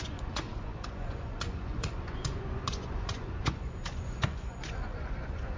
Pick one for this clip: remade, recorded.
remade